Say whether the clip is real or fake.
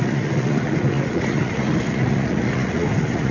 fake